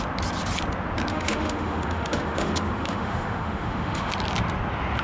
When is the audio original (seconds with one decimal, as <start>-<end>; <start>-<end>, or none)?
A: 0.0-1.1; 4.1-5.0